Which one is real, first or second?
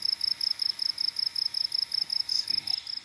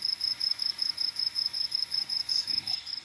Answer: first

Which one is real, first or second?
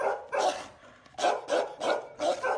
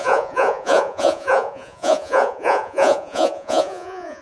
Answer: first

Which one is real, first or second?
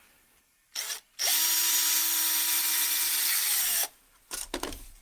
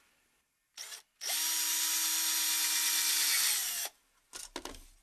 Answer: second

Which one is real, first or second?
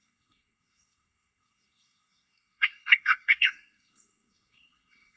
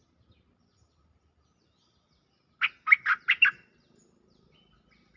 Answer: second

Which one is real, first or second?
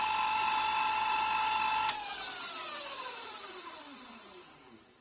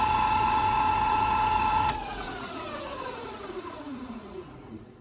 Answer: first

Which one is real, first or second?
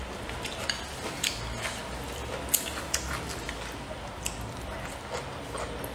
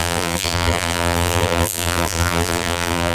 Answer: first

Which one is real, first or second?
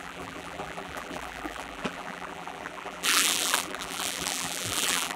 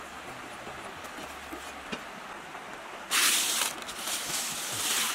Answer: second